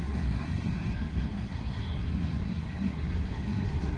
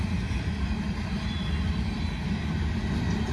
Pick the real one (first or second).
second